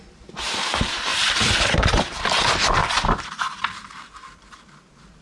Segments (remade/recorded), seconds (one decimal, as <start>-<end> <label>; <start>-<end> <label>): 0.0-2.8 remade; 2.8-4.0 recorded; 4.0-5.2 remade